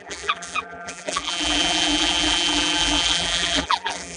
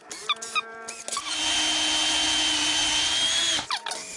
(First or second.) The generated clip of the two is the first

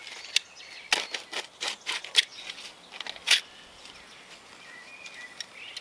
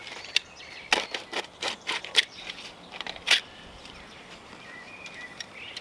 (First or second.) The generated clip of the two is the second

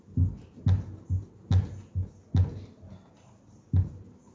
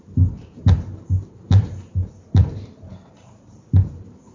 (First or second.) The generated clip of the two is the second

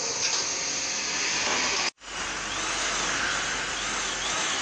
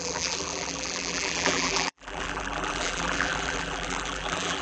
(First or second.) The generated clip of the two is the second